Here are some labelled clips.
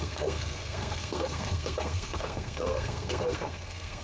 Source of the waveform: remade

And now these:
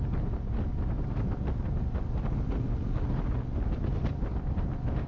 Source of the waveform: recorded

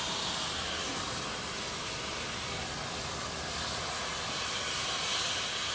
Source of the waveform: recorded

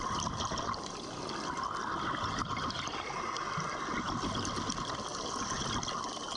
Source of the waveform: recorded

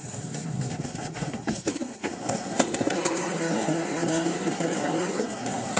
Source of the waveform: remade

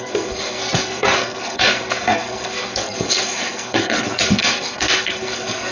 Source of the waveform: remade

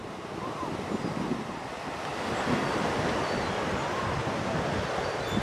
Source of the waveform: recorded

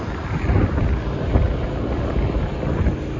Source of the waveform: recorded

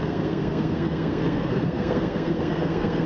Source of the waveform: remade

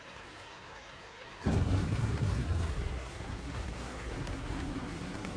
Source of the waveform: remade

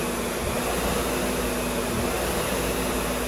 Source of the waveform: recorded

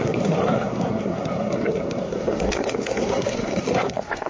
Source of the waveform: remade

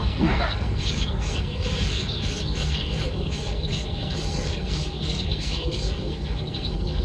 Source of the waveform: remade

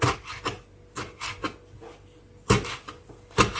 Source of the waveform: recorded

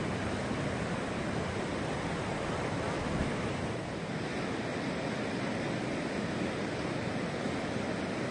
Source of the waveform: recorded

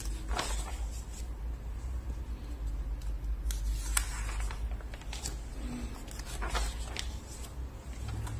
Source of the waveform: recorded